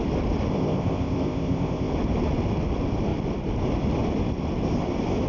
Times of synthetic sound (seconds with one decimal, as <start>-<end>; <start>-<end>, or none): 0.5-1.9